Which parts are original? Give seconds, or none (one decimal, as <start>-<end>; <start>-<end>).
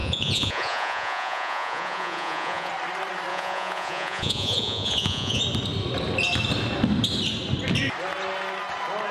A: 2.7-3.3; 5.4-9.1